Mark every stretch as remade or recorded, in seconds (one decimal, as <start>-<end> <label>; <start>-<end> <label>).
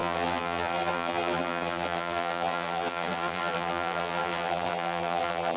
0.0-5.6 remade